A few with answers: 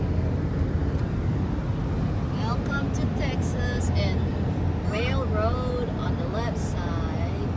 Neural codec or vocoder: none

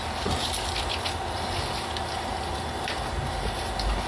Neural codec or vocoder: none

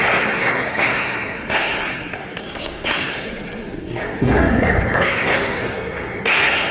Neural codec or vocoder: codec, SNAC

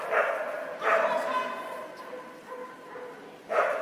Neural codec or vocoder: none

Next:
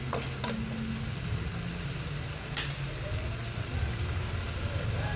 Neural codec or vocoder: none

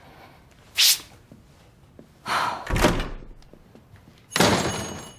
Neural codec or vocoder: none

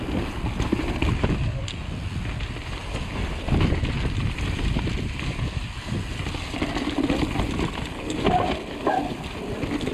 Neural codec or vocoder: none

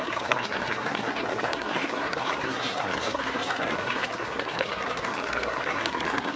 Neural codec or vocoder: codec, SNAC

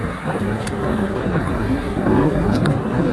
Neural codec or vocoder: codec, SNAC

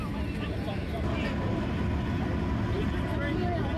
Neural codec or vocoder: none